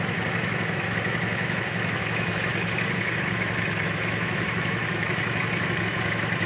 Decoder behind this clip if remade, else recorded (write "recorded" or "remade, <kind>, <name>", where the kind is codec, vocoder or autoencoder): remade, autoencoder, DAC-VAE